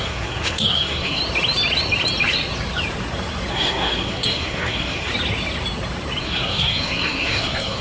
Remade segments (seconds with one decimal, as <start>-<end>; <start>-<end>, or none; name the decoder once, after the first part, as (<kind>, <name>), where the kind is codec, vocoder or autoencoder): 0.0-1.2 (codec, SNAC); 3.5-5.1; 6.2-7.8